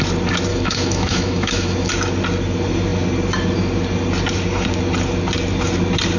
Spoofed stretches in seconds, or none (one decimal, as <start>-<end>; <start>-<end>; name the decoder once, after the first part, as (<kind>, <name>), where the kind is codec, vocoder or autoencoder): 0.5-1.9 (autoencoder, DAC-VAE)